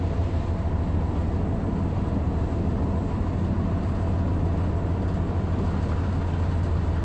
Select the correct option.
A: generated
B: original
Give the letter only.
B